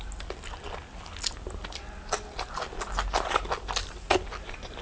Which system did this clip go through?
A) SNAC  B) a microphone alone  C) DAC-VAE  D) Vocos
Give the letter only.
B